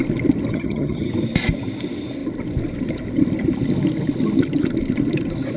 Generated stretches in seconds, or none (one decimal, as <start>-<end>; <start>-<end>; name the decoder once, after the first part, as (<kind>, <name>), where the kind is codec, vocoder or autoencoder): 0.5-1.1 (vocoder, HiFi-GAN)